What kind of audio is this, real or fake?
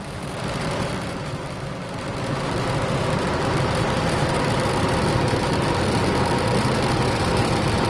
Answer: real